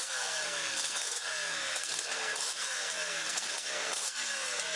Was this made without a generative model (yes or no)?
no